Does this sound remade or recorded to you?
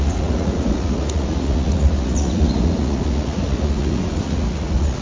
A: remade